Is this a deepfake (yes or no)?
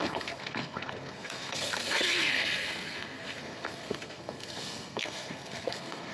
yes